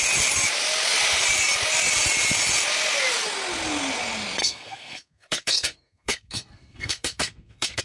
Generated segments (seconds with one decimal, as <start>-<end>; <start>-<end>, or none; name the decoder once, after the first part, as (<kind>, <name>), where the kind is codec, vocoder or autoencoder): 4.4-7.8 (codec, SNAC)